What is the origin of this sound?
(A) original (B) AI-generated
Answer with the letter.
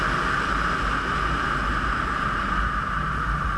A